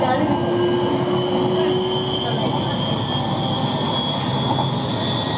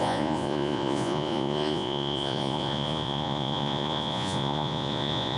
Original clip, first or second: first